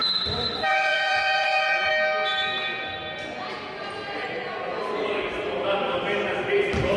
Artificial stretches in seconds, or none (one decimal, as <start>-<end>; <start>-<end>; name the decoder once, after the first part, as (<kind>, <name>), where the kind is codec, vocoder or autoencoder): 0.7-1.9 (vocoder, Vocos)